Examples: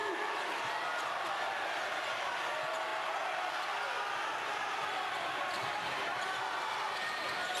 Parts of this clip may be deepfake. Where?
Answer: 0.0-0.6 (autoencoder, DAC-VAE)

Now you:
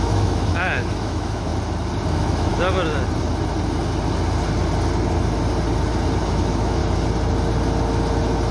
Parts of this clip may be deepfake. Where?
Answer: 0.0-1.5 (autoencoder, DAC-VAE); 2.1-2.5; 6.2-6.8

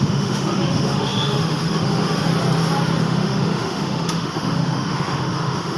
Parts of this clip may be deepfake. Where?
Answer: 0.0-2.3 (autoencoder, DAC-VAE); 3.0-5.8